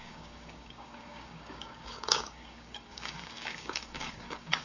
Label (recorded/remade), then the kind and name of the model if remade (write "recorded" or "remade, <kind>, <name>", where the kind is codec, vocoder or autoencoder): remade, codec, DAC